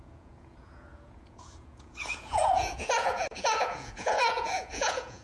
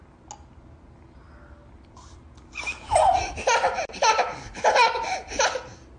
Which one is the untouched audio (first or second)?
second